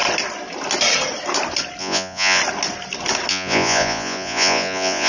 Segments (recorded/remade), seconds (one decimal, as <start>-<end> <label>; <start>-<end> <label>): 0.0-1.8 recorded; 1.8-2.4 remade; 2.4-3.3 recorded; 3.3-5.1 remade